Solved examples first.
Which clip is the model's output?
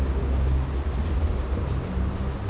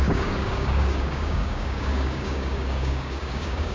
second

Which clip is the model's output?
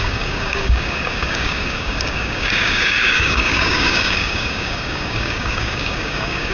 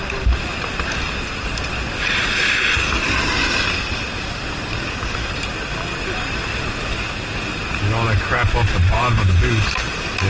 first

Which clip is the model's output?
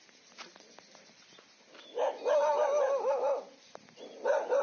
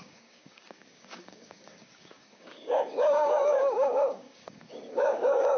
second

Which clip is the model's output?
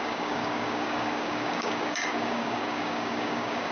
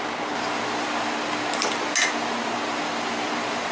first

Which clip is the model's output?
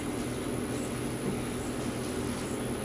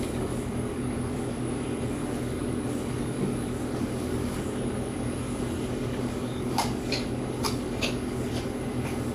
second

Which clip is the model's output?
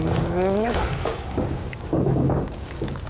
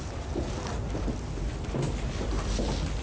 first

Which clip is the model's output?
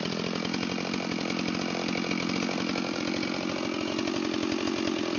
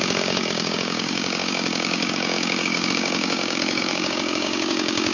second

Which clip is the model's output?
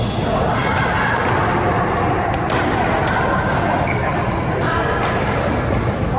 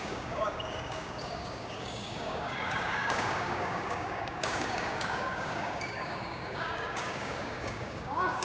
second